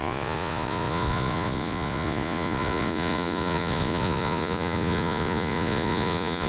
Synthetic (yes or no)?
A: yes